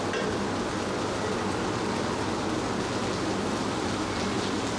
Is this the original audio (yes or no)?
yes